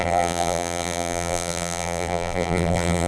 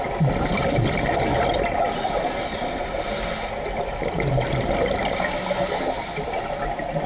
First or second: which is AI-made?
first